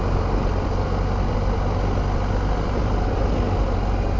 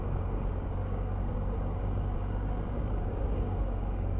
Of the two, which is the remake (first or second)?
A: second